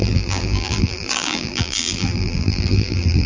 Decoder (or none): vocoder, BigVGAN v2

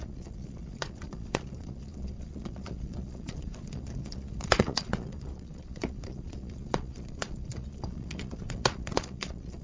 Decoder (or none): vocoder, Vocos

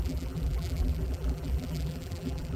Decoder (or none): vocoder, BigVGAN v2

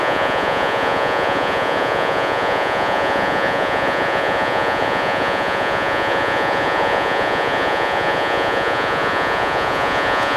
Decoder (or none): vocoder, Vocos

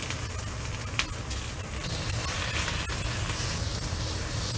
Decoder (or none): none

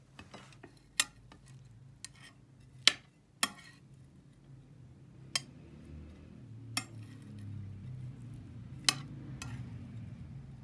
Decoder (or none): none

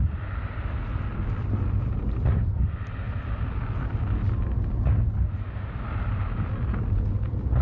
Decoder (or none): none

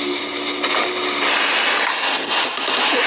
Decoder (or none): none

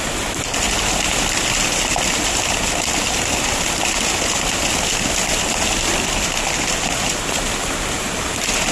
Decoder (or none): none